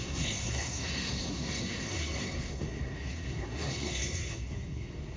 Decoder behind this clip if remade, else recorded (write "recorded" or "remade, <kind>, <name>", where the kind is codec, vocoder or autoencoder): remade, codec, SNAC